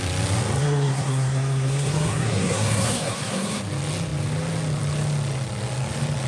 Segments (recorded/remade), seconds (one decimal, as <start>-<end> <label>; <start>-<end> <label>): 0.0-0.6 recorded; 0.6-3.6 remade; 3.6-6.3 recorded